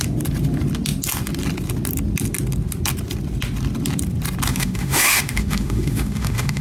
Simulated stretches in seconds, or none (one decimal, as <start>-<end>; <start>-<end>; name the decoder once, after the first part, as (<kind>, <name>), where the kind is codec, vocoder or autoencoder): 4.5-6.6 (autoencoder, DAC-VAE)